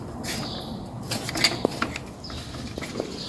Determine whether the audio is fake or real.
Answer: real